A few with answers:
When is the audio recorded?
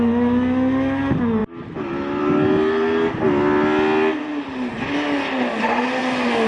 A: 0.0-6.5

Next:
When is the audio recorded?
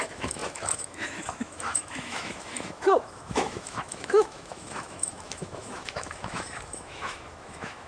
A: none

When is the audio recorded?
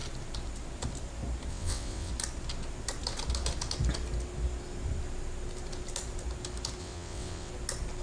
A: 0.0-1.5; 2.1-6.8; 7.5-8.0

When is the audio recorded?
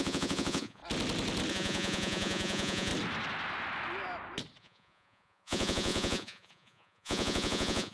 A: 0.8-1.5; 2.9-4.6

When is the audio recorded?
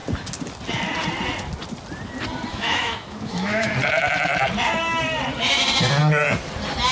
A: 0.0-2.5; 3.7-6.9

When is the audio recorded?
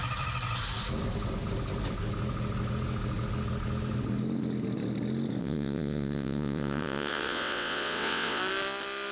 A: 0.0-5.4; 8.4-9.1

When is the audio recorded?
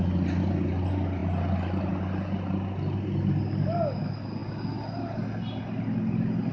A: 0.0-6.5